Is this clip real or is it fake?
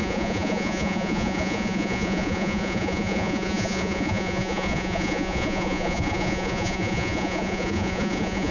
fake